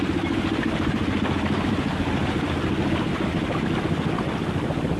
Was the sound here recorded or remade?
recorded